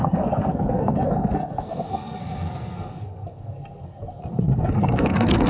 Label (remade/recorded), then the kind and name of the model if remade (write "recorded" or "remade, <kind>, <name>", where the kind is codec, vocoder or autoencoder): remade, codec, SNAC